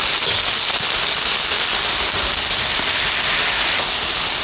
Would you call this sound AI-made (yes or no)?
no